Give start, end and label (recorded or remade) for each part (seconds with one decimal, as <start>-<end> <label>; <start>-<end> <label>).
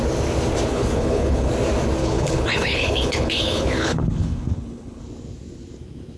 0.0-0.7 recorded; 0.7-1.5 remade; 1.5-2.0 recorded; 2.0-5.0 remade; 5.0-6.2 recorded